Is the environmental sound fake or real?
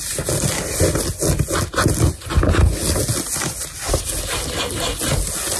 real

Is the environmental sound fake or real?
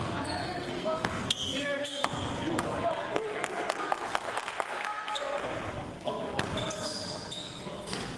fake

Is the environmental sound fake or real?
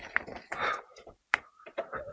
fake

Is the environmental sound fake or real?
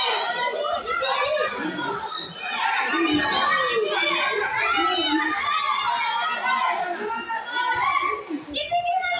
real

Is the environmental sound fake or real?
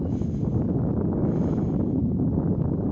real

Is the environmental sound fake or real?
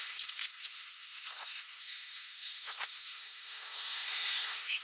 fake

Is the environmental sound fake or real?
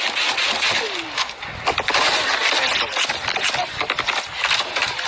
real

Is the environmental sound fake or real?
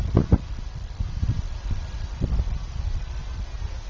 real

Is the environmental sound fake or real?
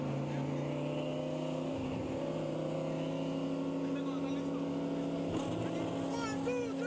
real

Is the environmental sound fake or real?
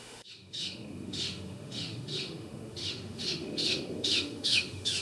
fake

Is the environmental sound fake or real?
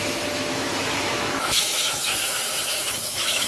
fake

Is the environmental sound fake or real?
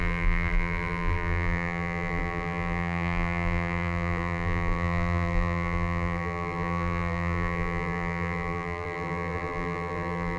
fake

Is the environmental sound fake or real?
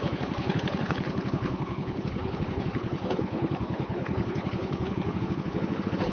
fake